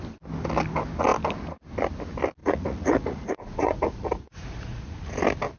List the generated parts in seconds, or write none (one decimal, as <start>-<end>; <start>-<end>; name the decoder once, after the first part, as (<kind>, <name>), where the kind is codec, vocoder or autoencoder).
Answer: 2.4-5.0 (vocoder, Vocos)